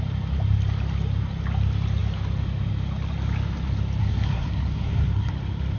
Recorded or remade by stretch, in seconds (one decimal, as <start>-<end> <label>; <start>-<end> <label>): 0.0-4.0 recorded; 4.0-5.3 remade; 5.3-5.8 recorded